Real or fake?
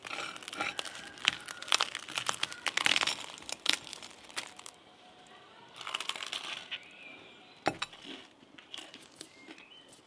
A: real